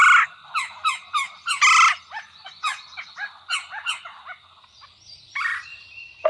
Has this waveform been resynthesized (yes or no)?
no